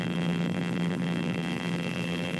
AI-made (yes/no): yes